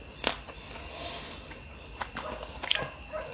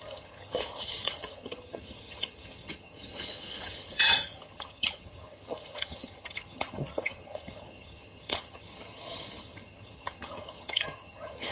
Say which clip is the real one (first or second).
first